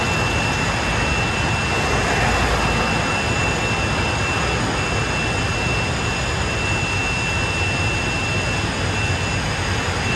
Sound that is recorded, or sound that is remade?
recorded